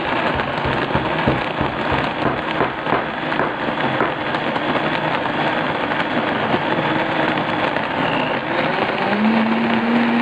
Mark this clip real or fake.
real